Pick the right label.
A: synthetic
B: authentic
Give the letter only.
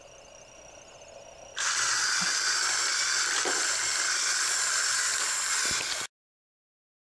B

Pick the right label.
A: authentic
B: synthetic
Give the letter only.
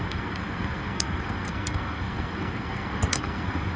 B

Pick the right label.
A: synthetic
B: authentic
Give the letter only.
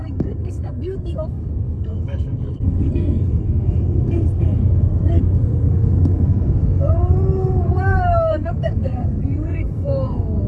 A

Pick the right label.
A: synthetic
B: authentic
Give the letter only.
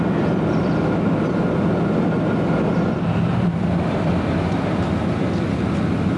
B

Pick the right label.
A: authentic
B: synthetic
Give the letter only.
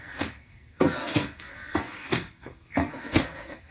B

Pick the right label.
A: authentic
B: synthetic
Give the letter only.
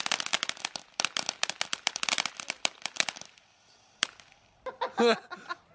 A